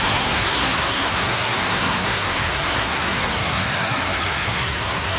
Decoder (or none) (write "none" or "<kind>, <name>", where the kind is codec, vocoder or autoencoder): codec, SNAC